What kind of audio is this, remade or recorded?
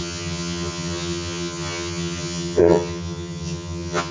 remade